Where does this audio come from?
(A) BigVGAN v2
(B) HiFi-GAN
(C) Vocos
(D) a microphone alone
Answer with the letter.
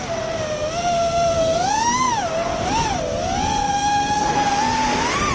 D